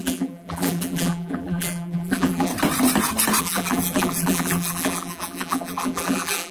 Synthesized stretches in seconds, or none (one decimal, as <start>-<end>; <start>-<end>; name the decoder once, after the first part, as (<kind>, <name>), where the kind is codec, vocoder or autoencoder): 0.0-2.5 (vocoder, BigVGAN v2); 3.4-6.5